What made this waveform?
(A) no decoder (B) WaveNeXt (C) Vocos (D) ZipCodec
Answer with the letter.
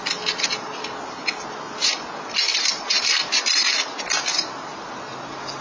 A